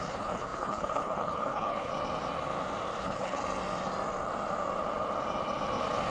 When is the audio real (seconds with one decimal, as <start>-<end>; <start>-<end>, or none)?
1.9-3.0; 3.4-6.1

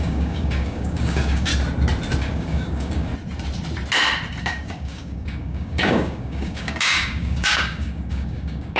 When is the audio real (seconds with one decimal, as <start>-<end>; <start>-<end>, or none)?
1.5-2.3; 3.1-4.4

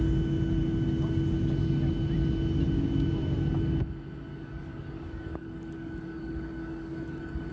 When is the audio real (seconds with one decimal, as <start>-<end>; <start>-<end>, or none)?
0.0-4.3

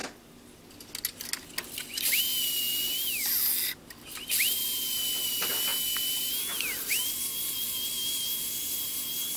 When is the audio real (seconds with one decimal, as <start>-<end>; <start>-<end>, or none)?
0.0-9.4

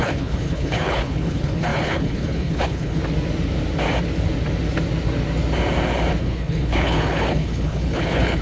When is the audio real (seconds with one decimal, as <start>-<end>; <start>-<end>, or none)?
3.0-6.2